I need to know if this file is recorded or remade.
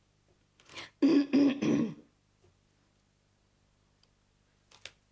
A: recorded